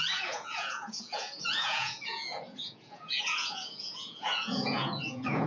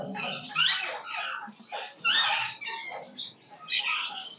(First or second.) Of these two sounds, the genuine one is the second